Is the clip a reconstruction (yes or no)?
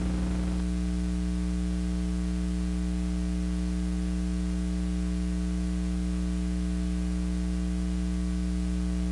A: no